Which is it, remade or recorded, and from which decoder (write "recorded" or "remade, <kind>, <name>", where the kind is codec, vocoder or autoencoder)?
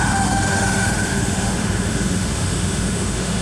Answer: remade, autoencoder, DAC-VAE